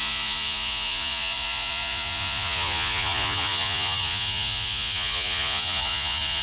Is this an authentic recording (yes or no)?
no